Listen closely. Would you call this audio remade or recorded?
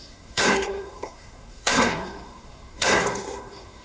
remade